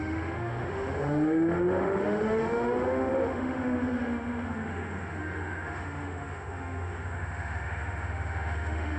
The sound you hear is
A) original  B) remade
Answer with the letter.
B